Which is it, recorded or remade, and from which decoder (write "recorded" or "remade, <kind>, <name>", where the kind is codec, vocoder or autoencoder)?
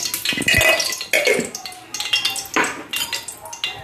recorded